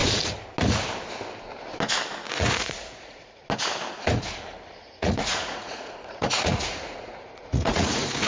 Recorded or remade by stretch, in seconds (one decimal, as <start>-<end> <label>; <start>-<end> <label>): 0.0-2.3 recorded; 2.3-3.4 remade; 3.4-4.8 recorded; 4.8-8.3 remade